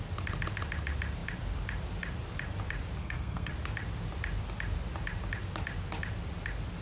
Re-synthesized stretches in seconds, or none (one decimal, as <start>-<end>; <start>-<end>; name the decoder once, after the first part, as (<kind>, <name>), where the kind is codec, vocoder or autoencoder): 3.0-3.5 (codec, SNAC)